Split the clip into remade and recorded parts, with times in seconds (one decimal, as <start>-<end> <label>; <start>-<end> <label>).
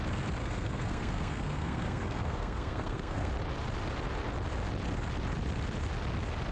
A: 0.0-0.4 recorded; 0.4-3.3 remade; 3.3-6.5 recorded